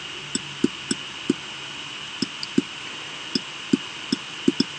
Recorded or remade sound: recorded